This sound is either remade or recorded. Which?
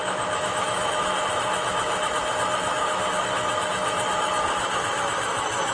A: remade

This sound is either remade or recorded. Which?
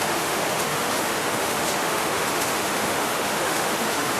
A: remade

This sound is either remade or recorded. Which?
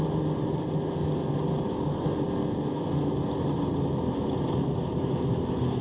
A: recorded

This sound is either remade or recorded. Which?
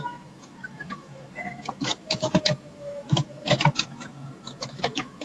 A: remade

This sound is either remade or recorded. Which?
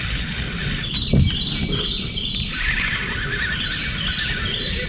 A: recorded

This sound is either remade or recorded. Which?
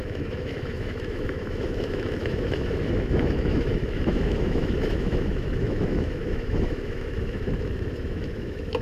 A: remade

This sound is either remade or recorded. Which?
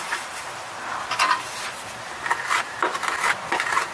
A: recorded